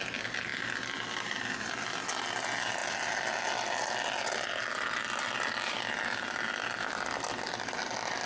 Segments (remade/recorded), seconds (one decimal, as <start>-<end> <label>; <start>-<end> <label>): 0.0-8.3 recorded